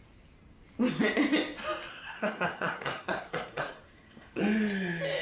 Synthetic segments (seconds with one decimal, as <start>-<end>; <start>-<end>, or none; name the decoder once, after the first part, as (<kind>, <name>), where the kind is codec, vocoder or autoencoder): 1.9-4.4 (codec, SNAC)